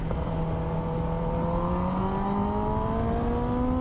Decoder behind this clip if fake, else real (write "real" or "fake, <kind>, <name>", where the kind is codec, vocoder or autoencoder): real